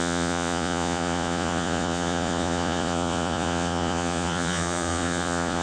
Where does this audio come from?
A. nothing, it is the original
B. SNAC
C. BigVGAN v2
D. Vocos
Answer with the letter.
D